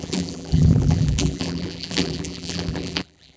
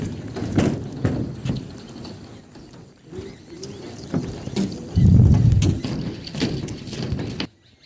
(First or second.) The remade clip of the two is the first